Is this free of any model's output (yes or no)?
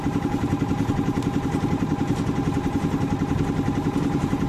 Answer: no